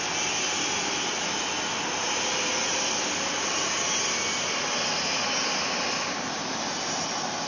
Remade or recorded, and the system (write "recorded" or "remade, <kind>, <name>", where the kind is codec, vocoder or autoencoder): recorded